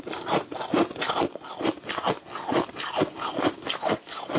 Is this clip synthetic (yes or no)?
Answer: no